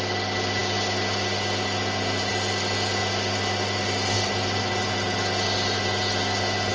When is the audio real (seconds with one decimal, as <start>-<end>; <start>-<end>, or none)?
0.0-6.7